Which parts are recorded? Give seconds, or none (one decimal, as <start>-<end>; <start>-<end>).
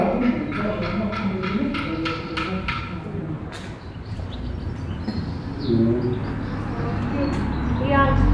0.0-8.3